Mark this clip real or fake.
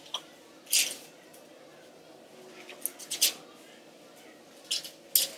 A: real